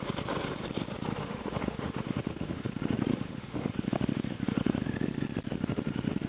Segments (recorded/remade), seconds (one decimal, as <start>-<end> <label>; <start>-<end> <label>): 0.0-1.2 recorded; 1.2-2.7 remade; 2.7-3.1 recorded; 3.1-4.8 remade; 4.8-6.3 recorded